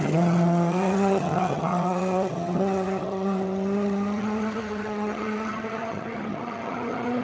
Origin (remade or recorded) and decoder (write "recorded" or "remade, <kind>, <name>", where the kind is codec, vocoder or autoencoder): remade, vocoder, HiFi-GAN